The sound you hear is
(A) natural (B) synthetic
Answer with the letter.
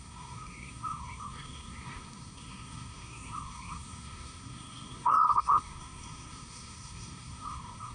B